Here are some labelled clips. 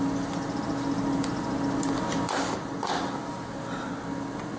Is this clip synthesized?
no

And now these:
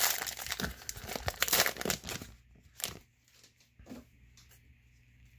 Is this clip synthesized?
no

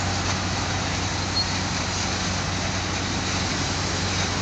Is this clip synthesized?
no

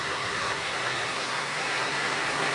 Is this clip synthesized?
yes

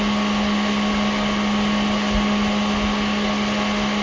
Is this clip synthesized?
no